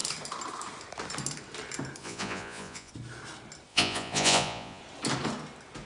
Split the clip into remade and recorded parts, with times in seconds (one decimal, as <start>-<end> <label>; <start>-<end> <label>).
0.0-2.0 recorded; 2.0-2.9 remade; 2.9-3.7 recorded; 3.7-4.8 remade; 4.8-5.9 recorded